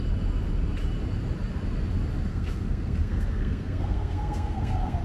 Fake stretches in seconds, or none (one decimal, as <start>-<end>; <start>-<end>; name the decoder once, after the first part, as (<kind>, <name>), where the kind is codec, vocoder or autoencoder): 2.3-5.0 (codec, SNAC)